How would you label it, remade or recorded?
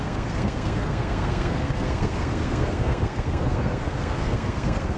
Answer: remade